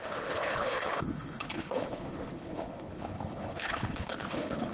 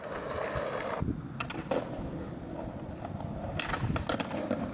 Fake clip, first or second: first